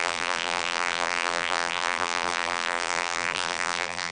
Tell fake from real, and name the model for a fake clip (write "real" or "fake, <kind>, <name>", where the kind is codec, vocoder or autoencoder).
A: fake, vocoder, BigVGAN v2